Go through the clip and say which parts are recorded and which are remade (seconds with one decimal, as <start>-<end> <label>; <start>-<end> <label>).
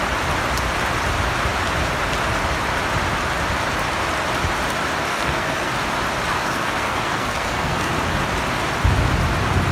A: 0.0-5.1 recorded; 5.1-5.7 remade; 5.7-6.3 recorded; 6.3-7.9 remade; 7.9-9.7 recorded